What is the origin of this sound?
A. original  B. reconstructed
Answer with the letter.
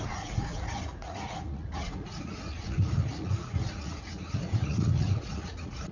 B